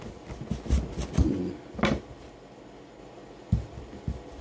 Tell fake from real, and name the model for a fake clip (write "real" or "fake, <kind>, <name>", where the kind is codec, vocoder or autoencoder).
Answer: real